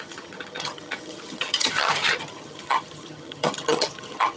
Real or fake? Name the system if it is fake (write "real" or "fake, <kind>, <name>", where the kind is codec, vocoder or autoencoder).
fake, vocoder, HiFi-GAN